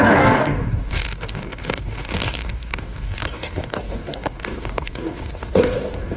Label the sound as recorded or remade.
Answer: remade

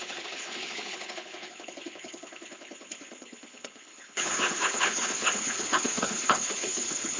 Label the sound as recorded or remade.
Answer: remade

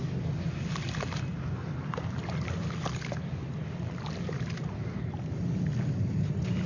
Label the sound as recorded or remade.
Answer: recorded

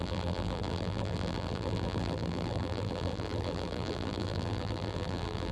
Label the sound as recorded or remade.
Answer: remade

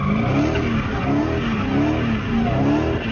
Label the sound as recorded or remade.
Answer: recorded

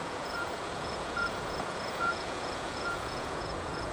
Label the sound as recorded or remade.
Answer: remade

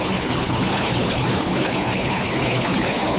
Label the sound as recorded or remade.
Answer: remade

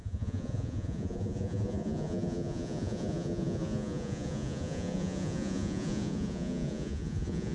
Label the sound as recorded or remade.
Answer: remade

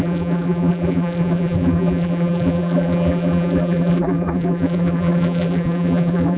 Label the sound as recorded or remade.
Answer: remade